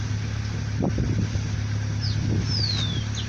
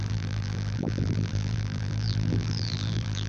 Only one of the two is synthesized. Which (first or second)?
second